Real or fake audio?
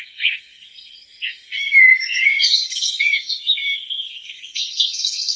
fake